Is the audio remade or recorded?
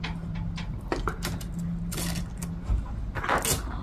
recorded